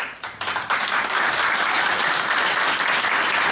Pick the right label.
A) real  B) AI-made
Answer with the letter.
A